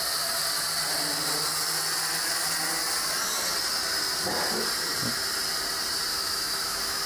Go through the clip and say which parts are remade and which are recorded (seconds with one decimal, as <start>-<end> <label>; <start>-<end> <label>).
0.0-6.1 recorded; 6.1-7.1 remade